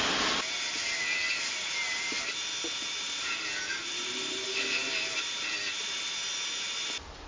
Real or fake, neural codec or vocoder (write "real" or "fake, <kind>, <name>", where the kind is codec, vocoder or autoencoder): real